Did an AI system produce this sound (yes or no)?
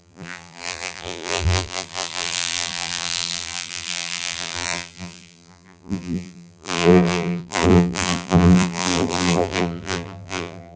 yes